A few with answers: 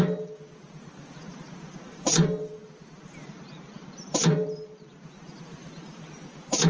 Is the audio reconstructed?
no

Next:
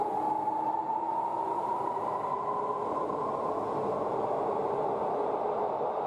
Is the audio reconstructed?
no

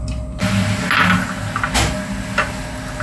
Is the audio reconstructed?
no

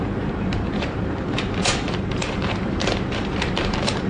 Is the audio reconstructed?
yes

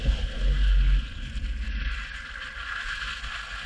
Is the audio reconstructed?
no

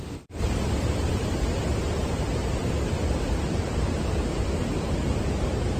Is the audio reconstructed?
yes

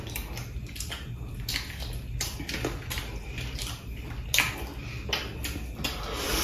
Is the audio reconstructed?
no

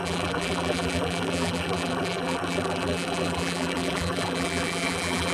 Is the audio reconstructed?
yes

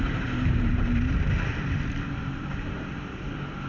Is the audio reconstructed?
yes